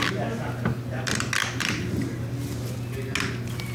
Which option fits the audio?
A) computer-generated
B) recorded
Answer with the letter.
B